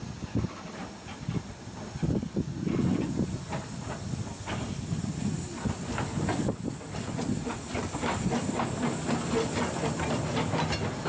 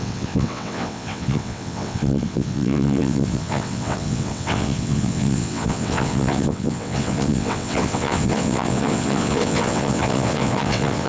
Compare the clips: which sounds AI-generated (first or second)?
second